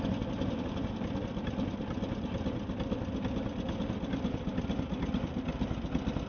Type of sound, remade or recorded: recorded